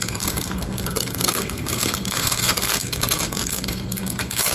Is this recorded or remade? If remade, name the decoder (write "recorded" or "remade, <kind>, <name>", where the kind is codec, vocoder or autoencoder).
remade, codec, SNAC